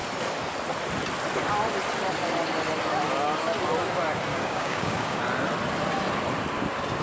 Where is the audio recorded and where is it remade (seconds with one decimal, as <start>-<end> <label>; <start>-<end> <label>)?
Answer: 0.0-4.3 recorded; 4.3-5.2 remade; 5.2-7.0 recorded